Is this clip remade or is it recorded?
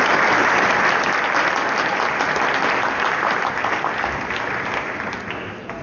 recorded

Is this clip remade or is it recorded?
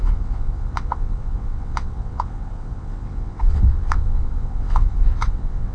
remade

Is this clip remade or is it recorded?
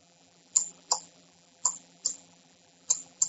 remade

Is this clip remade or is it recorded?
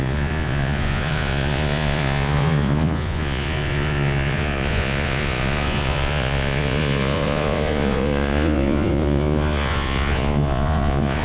remade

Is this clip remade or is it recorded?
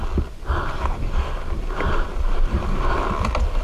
recorded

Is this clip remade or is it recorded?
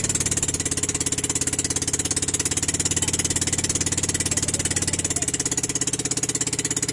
recorded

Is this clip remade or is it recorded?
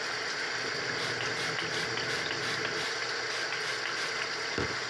recorded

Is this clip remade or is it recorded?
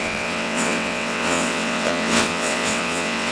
remade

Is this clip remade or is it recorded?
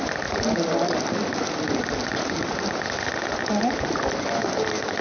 recorded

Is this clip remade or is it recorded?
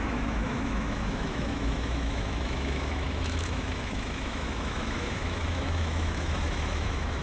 remade